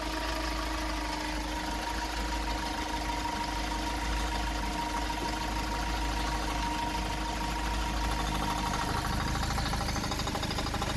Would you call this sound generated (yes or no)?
no